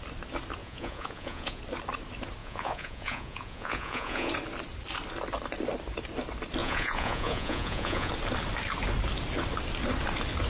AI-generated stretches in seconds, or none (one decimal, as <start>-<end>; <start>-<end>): 0.6-1.6; 2.4-4.3; 6.6-8.1